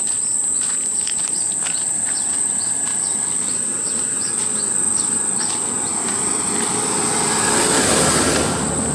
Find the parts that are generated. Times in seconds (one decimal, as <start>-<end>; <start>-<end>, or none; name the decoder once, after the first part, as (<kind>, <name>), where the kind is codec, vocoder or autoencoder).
5.9-6.5 (vocoder, BigVGAN v2)